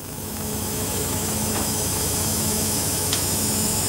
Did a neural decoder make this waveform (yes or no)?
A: yes